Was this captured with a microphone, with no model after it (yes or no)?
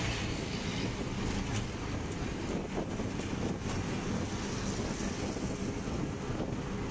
yes